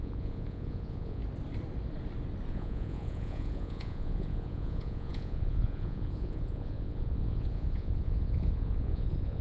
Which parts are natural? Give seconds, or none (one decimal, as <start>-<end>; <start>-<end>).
1.2-2.5